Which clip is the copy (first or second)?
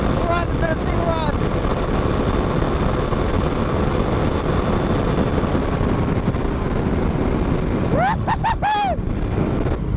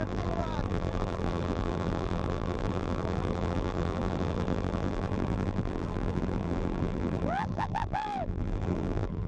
second